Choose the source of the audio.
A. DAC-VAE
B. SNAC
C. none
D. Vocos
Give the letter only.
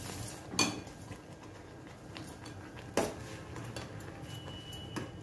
C